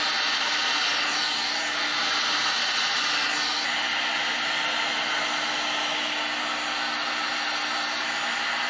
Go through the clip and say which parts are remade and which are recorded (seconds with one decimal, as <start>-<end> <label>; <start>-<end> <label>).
0.0-8.7 recorded